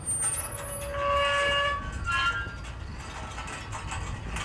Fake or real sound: real